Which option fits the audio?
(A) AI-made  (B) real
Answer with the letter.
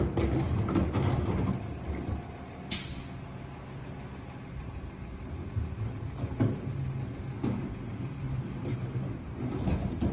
B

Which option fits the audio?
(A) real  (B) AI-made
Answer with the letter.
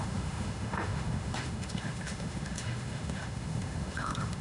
B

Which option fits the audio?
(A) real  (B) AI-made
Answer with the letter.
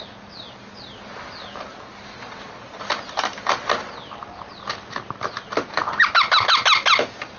A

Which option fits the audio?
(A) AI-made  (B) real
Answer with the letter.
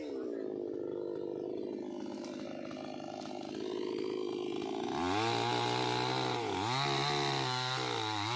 B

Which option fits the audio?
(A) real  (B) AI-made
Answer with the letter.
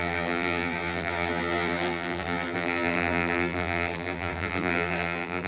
B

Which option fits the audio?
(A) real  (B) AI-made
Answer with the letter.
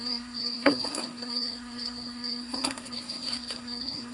B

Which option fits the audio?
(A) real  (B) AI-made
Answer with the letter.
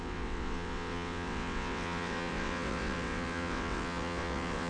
B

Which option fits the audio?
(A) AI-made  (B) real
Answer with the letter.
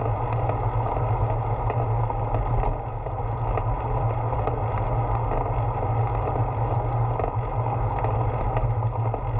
B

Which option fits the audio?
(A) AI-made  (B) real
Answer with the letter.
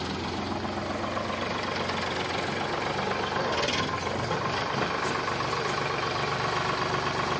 B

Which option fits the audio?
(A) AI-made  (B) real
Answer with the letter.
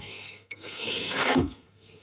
A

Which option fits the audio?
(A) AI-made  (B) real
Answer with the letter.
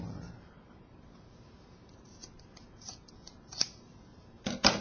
A